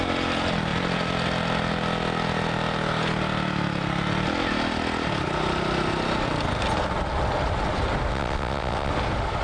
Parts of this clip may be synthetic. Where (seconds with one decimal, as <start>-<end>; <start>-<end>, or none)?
8.1-8.9